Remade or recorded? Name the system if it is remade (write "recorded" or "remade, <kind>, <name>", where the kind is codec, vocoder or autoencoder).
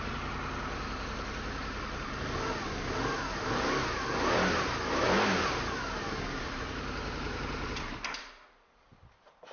recorded